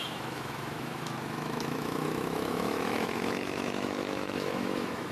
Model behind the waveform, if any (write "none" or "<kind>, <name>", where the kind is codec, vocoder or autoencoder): autoencoder, DAC-VAE